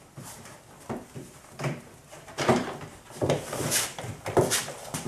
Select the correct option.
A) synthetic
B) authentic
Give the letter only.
A